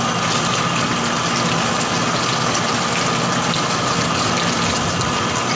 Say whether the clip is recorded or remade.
recorded